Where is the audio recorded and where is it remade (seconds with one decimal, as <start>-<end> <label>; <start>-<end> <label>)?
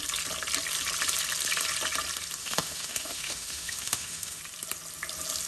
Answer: 0.0-2.4 recorded; 2.4-4.4 remade; 4.4-5.5 recorded